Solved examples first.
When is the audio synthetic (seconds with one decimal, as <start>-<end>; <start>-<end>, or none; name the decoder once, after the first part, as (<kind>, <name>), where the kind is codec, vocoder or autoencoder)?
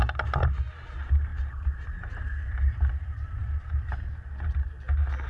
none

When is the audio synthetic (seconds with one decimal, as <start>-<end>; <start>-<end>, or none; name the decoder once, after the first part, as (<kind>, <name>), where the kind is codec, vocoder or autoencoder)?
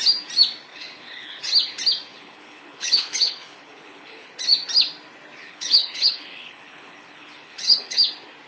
0.7-1.4 (codec, HILCodec); 2.1-4.3; 5.4-8.1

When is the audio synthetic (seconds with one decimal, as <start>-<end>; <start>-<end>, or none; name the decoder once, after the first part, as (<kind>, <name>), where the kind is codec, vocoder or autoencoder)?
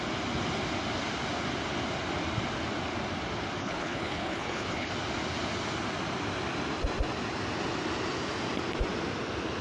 3.6-4.9 (codec, HILCodec)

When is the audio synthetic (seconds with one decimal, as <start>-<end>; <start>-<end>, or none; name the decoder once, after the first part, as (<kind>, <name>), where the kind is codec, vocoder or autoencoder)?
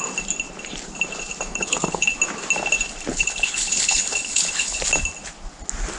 1.5-2.1 (codec, HILCodec); 3.1-4.8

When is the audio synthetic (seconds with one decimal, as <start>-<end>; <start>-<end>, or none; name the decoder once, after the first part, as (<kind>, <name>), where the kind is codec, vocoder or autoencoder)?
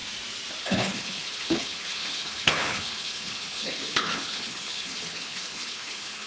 0.6-6.3 (codec, HILCodec)